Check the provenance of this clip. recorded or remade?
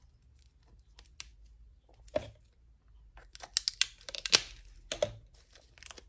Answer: recorded